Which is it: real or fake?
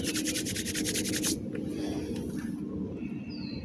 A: real